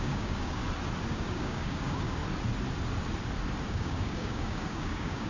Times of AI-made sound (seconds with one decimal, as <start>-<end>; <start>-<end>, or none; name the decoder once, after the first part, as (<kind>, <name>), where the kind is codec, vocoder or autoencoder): 0.0-0.6 (codec, DAC); 1.1-2.2; 3.7-5.3